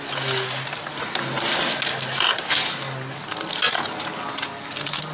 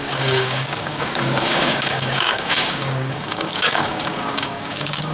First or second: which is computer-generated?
second